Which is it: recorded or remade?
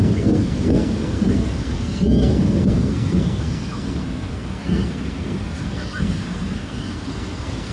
remade